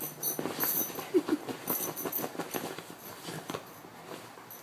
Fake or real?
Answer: real